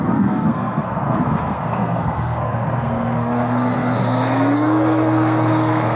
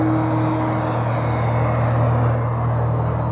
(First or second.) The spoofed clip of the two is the first